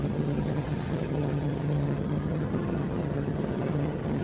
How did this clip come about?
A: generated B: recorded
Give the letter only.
A